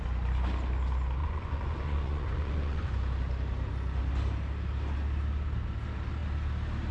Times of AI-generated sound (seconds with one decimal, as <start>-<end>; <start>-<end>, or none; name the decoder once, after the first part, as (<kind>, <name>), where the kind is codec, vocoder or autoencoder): 1.2-2.9 (vocoder, Vocos)